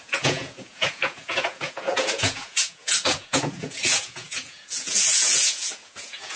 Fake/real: fake